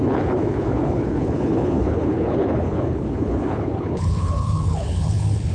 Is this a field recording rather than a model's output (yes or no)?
no